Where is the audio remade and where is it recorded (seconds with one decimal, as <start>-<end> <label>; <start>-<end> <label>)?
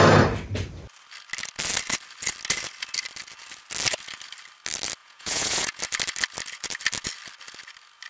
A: 0.0-5.0 recorded; 5.0-5.8 remade; 5.8-8.1 recorded